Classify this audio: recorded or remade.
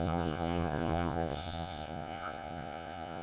remade